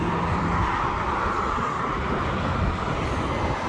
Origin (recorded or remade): recorded